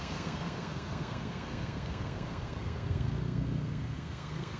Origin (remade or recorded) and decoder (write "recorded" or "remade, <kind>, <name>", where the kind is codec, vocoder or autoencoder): remade, codec, SNAC